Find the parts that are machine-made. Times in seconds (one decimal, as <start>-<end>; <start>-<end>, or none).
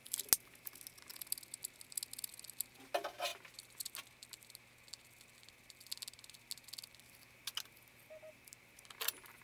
none